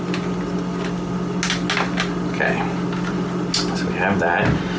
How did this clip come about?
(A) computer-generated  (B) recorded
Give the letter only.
B